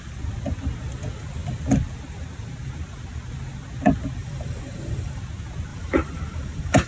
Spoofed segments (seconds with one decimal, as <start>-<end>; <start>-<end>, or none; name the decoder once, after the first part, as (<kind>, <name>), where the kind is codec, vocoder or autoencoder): 4.2-5.2 (vocoder, BigVGAN v2); 5.7-6.9